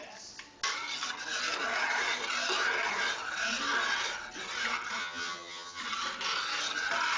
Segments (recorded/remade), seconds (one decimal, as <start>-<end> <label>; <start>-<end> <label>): 0.0-5.0 recorded; 5.0-5.8 remade; 5.8-7.2 recorded